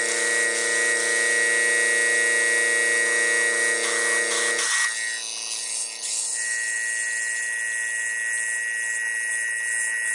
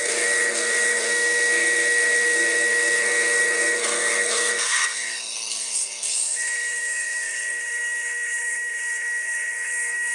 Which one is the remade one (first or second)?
second